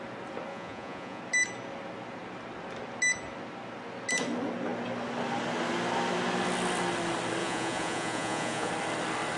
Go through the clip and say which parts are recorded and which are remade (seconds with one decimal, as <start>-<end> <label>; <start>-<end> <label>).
0.0-0.5 recorded; 0.5-1.2 remade; 1.2-7.4 recorded; 7.4-8.7 remade; 8.7-9.4 recorded